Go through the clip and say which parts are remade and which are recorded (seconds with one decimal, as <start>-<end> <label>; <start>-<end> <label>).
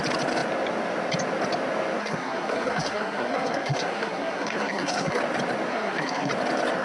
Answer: 0.0-2.0 recorded; 2.0-5.2 remade; 5.2-5.7 recorded; 5.7-6.3 remade; 6.3-6.8 recorded